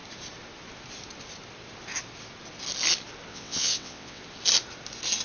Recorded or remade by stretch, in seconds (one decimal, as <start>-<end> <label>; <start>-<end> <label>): 0.0-3.3 recorded; 3.3-4.2 remade; 4.2-5.2 recorded